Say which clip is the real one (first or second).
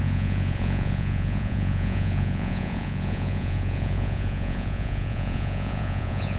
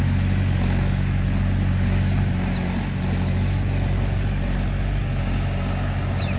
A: second